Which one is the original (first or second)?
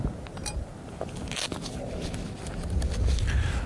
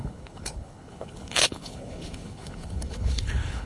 first